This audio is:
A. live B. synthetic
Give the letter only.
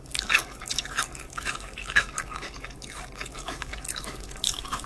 B